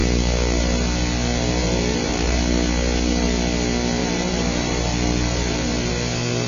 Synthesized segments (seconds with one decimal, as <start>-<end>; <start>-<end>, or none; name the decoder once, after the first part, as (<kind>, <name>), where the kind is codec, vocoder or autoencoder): 1.6-2.4 (vocoder, BigVGAN v2); 4.0-5.9